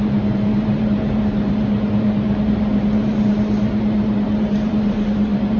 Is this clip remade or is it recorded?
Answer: remade